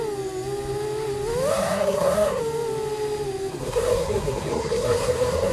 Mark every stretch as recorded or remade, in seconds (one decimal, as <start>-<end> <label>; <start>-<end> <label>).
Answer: 0.0-1.5 recorded; 1.5-2.4 remade; 2.4-3.5 recorded; 3.5-5.5 remade